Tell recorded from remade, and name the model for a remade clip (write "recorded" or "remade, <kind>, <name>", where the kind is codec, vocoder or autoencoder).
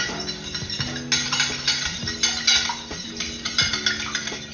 recorded